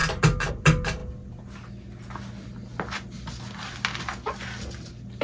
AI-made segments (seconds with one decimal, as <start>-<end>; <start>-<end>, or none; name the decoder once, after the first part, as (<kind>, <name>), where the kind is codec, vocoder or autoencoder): none